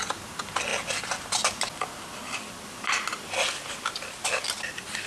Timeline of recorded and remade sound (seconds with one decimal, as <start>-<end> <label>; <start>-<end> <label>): 0.0-5.1 recorded